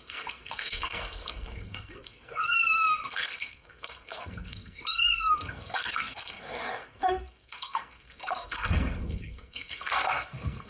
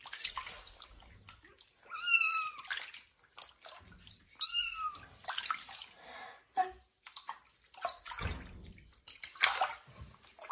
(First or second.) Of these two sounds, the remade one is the first